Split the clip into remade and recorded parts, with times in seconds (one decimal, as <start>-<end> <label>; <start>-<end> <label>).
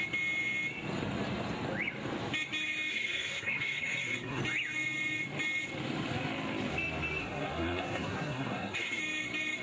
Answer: 0.0-2.9 recorded; 2.9-4.4 remade; 4.4-7.2 recorded; 7.2-9.0 remade; 9.0-9.6 recorded